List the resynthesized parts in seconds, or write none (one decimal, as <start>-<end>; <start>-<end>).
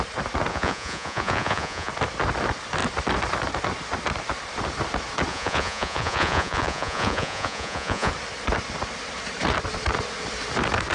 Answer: 0.5-1.9; 5.3-8.1